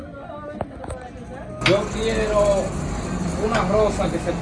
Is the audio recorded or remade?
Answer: recorded